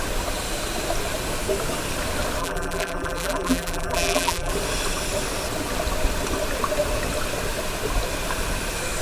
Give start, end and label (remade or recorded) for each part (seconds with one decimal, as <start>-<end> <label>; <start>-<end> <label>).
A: 0.0-2.4 recorded; 2.4-4.5 remade; 4.5-9.0 recorded